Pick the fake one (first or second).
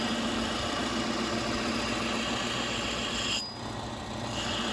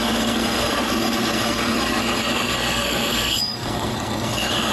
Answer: second